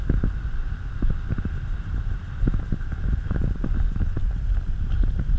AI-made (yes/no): no